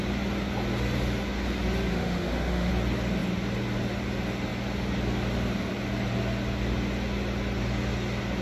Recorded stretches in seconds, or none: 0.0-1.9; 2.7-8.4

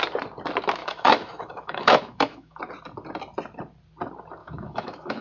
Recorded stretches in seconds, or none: 0.0-0.8; 2.6-4.4

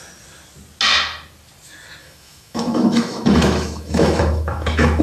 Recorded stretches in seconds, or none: 0.0-2.0

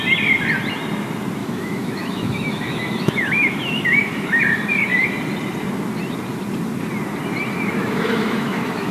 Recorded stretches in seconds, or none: 0.0-1.4; 4.4-7.8

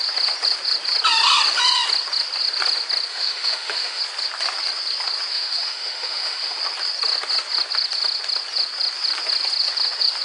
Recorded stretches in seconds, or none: 0.0-3.1; 4.0-5.3; 6.6-10.2

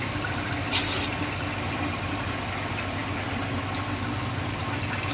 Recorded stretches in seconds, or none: 0.0-5.1